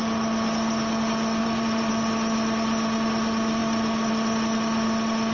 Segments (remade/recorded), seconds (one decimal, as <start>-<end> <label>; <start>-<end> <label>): 0.0-1.4 recorded; 1.4-1.9 remade; 1.9-5.3 recorded